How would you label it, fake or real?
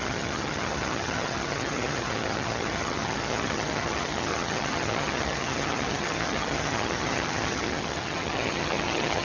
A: fake